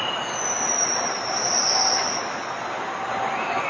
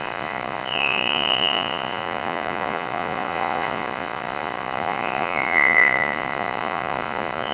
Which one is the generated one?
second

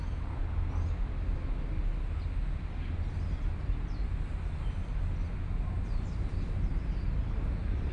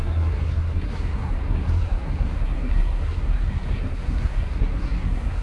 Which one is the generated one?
second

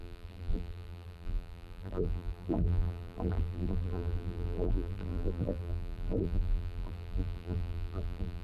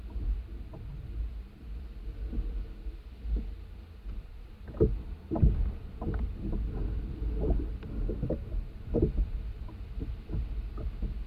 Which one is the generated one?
first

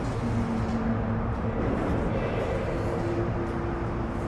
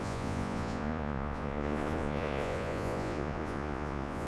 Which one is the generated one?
second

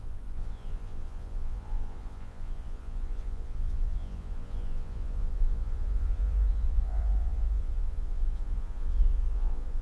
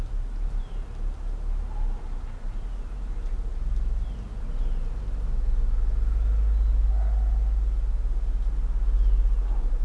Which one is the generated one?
first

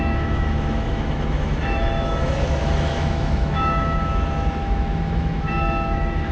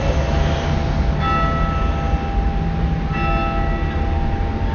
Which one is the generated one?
first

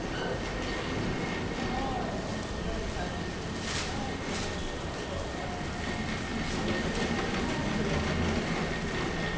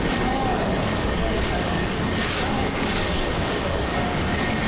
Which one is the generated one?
second